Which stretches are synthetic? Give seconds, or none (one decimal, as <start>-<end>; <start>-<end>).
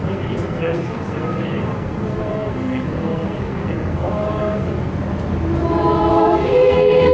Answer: 0.0-4.9; 6.1-7.1